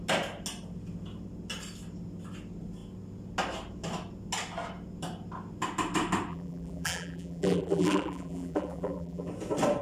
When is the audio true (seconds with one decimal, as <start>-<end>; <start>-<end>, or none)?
0.0-6.3; 9.3-9.8